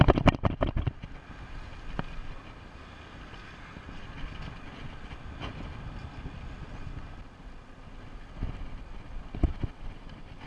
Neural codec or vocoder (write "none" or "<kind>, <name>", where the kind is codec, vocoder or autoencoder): none